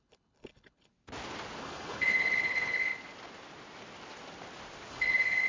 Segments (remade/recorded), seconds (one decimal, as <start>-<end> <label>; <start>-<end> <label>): 0.0-0.9 remade; 0.9-1.6 recorded; 1.6-2.9 remade; 2.9-4.9 recorded; 4.9-5.5 remade

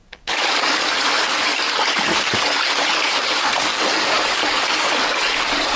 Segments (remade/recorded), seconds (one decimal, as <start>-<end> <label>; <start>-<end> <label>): 0.0-5.8 remade

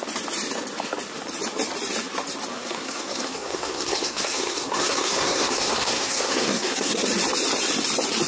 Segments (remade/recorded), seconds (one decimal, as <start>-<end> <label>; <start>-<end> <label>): 0.0-2.5 recorded; 2.5-7.0 remade; 7.0-8.3 recorded

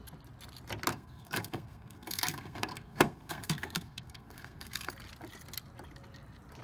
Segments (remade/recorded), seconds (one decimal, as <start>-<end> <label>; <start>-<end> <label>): 0.0-0.9 recorded; 0.9-4.9 remade; 4.9-6.6 recorded

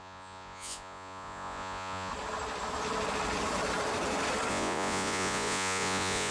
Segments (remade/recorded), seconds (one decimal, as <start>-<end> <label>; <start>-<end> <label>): 0.0-2.1 remade; 2.1-4.5 recorded; 4.5-6.3 remade

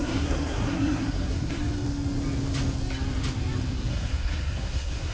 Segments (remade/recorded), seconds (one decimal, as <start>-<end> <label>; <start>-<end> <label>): 0.0-1.6 remade; 1.6-3.9 recorded; 3.9-5.1 remade